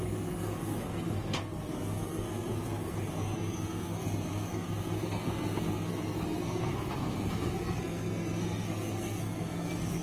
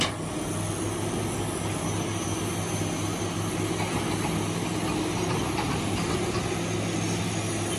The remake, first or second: first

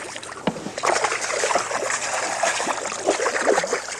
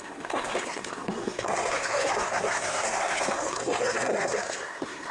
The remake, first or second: second